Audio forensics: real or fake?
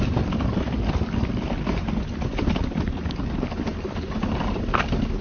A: fake